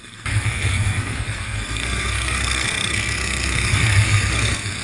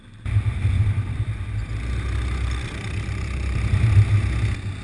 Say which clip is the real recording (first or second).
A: second